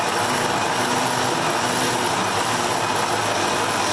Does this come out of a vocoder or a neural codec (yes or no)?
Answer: no